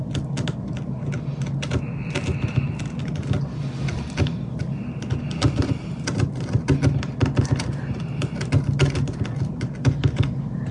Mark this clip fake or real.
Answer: real